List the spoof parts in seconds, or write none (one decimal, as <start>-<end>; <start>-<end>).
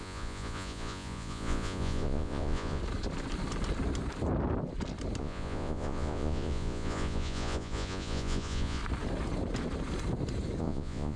0.0-2.8; 5.2-8.8; 10.6-11.2